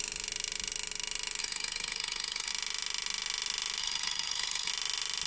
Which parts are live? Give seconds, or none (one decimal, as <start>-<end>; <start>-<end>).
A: 0.0-1.4; 2.5-3.8; 4.7-5.3